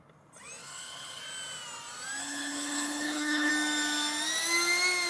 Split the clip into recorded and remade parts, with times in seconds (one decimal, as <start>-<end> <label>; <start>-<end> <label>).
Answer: 0.0-0.6 recorded; 0.6-1.2 remade; 1.2-2.2 recorded; 2.2-3.5 remade; 3.5-5.1 recorded